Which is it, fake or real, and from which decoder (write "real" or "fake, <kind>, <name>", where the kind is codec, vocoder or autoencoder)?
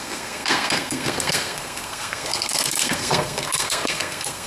fake, codec, SNAC